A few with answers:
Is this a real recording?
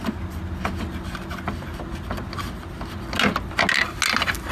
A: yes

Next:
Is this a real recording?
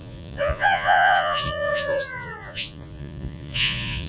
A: no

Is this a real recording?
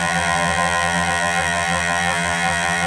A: no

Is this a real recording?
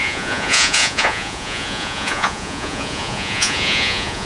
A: no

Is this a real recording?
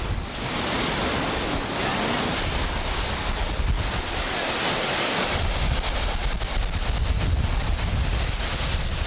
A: yes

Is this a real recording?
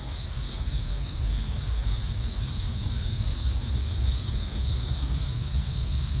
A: no